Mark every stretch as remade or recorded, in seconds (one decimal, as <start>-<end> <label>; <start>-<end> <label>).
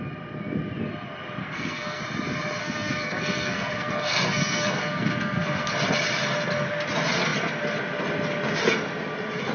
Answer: 0.0-1.4 recorded; 1.4-2.0 remade; 2.0-2.6 recorded; 2.6-5.7 remade; 5.7-9.5 recorded